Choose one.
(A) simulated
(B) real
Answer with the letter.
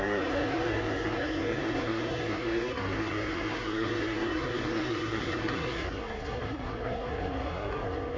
A